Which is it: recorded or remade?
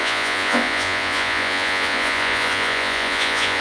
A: remade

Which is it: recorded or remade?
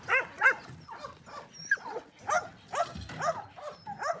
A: recorded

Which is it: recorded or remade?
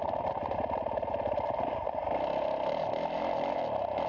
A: recorded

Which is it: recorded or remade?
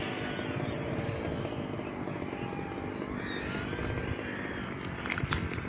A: recorded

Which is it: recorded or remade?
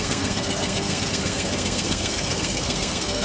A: remade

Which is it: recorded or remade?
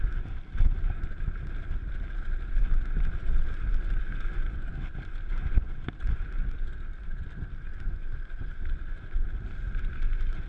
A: recorded